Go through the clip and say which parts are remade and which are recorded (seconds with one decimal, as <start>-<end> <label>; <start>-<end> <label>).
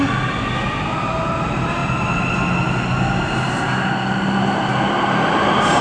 0.0-5.8 recorded